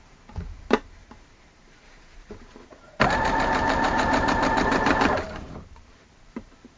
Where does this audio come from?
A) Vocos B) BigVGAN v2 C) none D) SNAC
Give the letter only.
B